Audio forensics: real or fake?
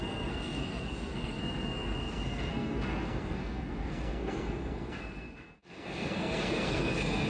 fake